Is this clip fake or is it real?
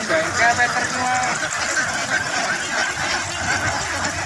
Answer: real